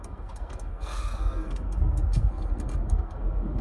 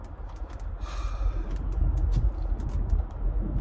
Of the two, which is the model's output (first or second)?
first